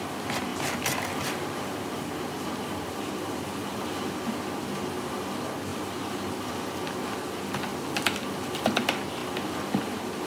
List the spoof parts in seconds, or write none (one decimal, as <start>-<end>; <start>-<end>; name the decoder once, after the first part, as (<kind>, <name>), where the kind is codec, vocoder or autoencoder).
0.5-4.1 (vocoder, BigVGAN v2); 5.7-6.5